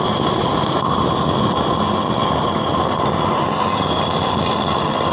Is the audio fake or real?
real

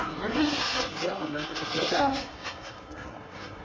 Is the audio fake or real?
fake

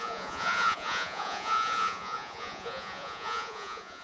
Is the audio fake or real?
fake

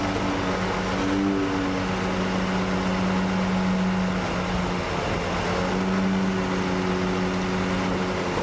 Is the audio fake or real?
real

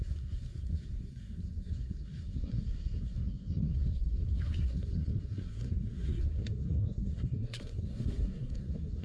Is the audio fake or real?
fake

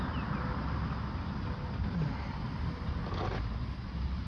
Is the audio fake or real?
real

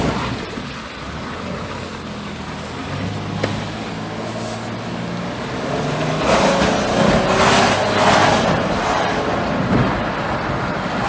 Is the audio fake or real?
real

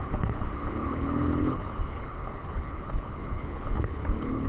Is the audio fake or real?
fake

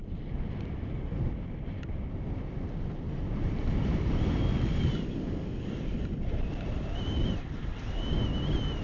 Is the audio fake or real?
real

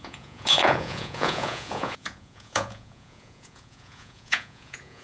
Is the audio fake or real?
fake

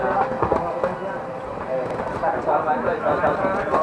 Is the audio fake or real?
fake